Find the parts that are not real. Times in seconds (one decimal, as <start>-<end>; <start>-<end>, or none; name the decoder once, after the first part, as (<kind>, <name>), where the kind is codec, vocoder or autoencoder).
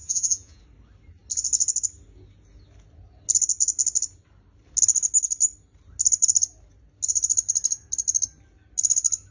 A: 0.0-0.6 (vocoder, Vocos)